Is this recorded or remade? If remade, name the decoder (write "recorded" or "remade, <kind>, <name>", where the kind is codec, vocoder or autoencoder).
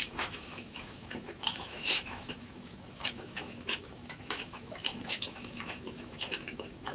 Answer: remade, autoencoder, DAC-VAE